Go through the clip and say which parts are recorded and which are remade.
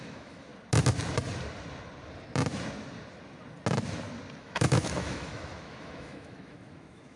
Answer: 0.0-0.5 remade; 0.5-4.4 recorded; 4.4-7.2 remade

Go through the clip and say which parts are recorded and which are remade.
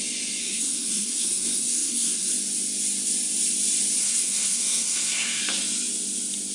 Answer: 0.0-0.4 recorded; 0.4-2.3 remade; 2.3-4.0 recorded; 4.0-5.4 remade; 5.4-6.5 recorded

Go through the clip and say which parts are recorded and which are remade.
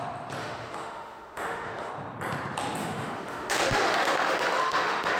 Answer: 0.0-0.4 recorded; 0.4-1.9 remade; 1.9-2.8 recorded; 2.8-5.2 remade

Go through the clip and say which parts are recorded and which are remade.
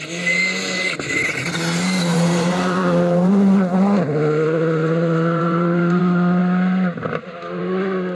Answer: 0.0-2.1 recorded; 2.1-3.3 remade; 3.3-4.8 recorded; 4.8-6.0 remade; 6.0-8.1 recorded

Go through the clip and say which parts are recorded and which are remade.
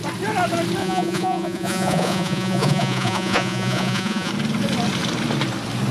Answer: 0.0-0.8 recorded; 0.8-4.3 remade; 4.3-5.9 recorded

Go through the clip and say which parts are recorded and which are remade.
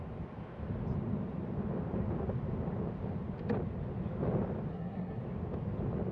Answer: 0.0-4.7 recorded; 4.7-5.2 remade; 5.2-6.1 recorded